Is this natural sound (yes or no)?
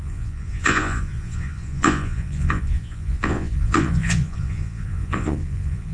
no